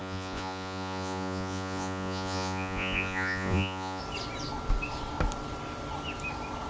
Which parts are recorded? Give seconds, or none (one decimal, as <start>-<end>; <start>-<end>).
4.0-6.7